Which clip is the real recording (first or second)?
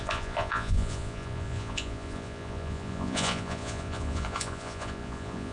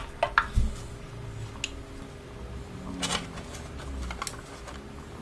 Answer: second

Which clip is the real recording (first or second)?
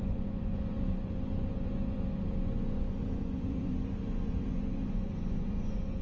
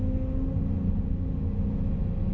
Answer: second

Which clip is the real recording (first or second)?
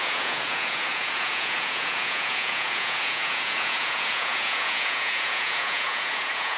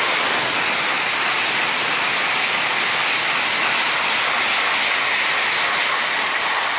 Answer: second